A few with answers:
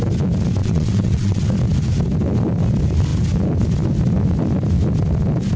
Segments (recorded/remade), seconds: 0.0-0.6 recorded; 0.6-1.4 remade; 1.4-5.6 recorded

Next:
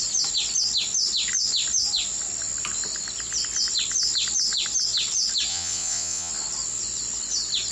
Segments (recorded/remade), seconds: 0.0-5.5 recorded; 5.5-6.3 remade; 6.3-7.7 recorded

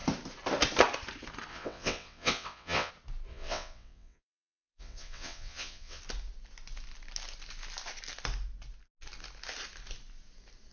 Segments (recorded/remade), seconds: 0.0-1.5 recorded; 1.5-2.9 remade; 2.9-3.3 recorded; 3.3-6.0 remade; 6.0-10.7 recorded

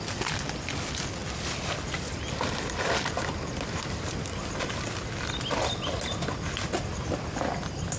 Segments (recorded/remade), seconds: 0.0-8.0 recorded

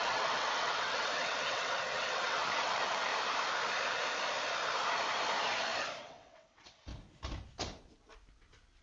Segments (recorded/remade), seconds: 0.0-3.1 remade; 3.1-6.0 recorded; 6.0-6.9 remade; 6.9-8.8 recorded

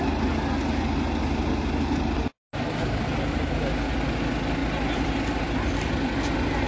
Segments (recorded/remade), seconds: 0.0-6.7 recorded

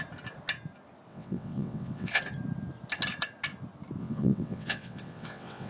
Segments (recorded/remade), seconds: 0.0-1.1 recorded; 1.1-2.2 remade; 2.2-4.0 recorded; 4.0-5.7 remade

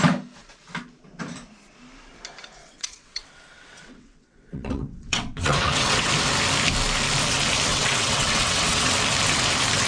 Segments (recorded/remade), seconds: 0.0-2.6 recorded; 2.6-6.1 remade; 6.1-7.7 recorded; 7.7-8.9 remade; 8.9-9.9 recorded